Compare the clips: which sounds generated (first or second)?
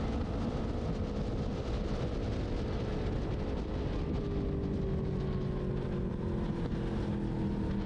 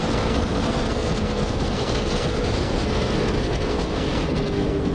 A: second